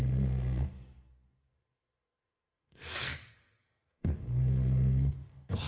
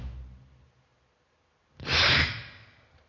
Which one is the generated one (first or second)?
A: first